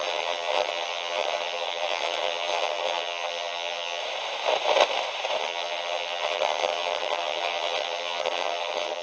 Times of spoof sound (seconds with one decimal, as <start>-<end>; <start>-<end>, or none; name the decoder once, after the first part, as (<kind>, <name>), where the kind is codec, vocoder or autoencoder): 0.0-4.0 (vocoder, HiFi-GAN); 5.4-9.0